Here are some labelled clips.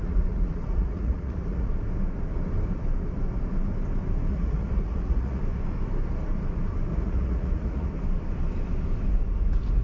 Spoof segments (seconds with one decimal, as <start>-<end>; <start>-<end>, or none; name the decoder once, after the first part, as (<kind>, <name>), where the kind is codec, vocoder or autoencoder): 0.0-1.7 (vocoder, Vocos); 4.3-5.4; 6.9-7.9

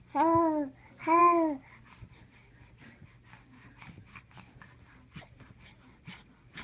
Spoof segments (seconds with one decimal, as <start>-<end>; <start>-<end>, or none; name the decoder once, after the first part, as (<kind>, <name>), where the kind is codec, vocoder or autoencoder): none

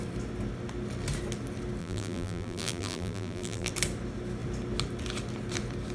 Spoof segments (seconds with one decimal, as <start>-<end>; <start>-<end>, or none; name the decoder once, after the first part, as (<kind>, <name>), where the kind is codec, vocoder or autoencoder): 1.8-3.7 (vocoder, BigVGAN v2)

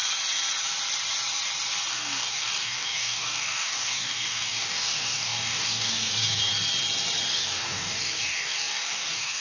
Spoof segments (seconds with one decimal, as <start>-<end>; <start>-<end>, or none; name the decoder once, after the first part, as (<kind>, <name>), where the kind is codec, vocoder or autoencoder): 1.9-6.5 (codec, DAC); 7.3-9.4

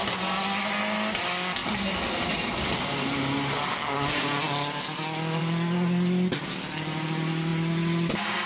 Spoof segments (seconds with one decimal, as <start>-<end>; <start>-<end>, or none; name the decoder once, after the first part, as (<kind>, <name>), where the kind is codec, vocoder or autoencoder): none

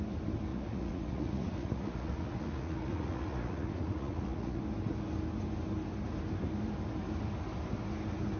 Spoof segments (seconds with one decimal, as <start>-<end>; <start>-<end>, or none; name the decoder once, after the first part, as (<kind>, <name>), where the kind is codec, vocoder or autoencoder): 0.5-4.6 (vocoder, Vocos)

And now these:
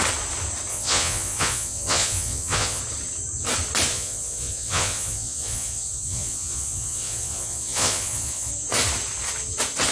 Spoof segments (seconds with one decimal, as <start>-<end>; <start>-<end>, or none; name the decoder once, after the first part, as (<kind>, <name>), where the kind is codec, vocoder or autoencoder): 0.7-2.8 (vocoder, Vocos); 3.9-8.5

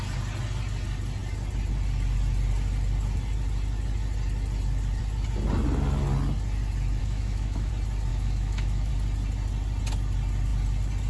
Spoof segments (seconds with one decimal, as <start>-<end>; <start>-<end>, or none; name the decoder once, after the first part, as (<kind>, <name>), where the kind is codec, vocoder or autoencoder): 7.0-7.7 (autoencoder, DAC-VAE); 8.1-8.9